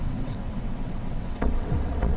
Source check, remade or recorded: remade